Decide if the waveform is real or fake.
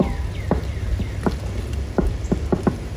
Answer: real